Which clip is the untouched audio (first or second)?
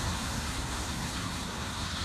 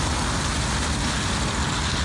second